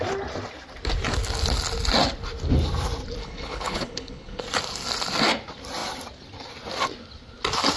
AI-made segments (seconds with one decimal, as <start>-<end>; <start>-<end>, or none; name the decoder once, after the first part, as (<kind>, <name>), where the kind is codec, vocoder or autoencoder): 3.2-4.4 (codec, HILCodec)